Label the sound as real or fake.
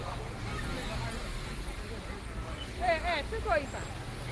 real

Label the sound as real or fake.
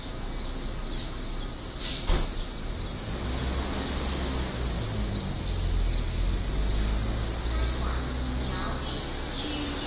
real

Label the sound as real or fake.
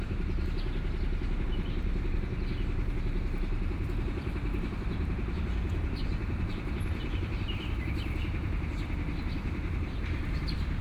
real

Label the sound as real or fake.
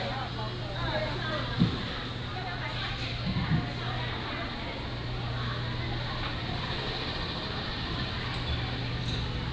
real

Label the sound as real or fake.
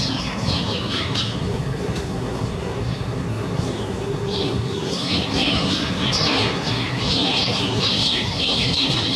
fake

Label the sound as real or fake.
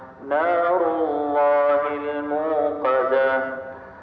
real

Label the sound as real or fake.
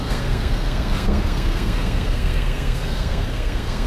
fake